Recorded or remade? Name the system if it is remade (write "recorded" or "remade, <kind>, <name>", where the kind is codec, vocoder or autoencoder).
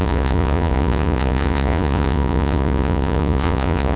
remade, vocoder, Vocos